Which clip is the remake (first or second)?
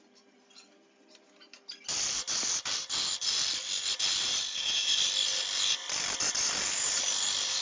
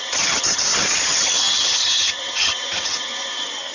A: second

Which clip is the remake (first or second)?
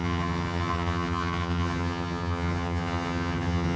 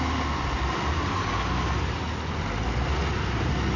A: first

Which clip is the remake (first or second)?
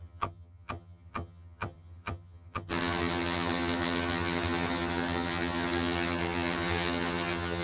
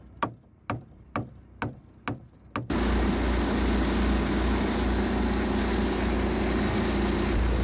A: first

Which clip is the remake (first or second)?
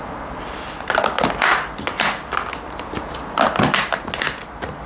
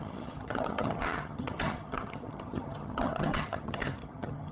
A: second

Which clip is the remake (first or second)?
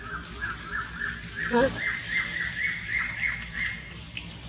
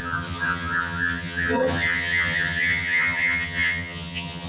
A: second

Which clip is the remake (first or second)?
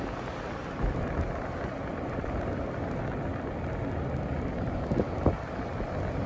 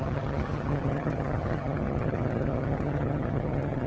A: second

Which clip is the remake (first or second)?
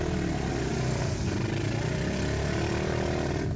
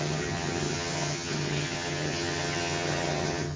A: second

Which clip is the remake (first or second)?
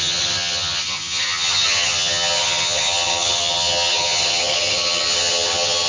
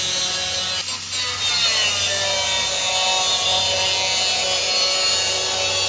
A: first